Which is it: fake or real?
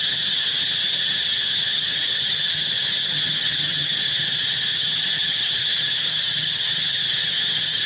fake